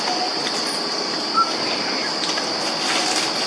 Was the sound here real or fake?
real